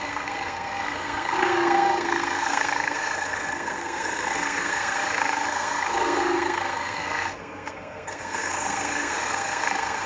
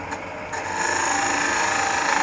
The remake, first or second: first